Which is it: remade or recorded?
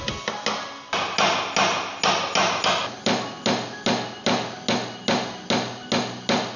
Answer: recorded